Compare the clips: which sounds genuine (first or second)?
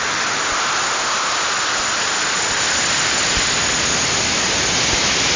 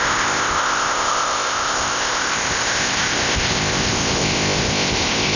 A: first